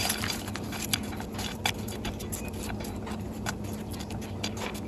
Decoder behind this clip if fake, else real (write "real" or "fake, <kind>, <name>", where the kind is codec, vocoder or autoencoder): real